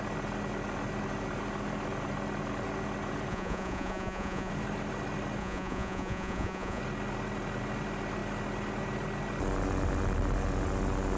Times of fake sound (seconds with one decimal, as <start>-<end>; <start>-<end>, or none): 3.3-4.5; 5.4-6.8